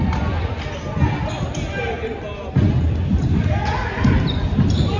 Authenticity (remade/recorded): recorded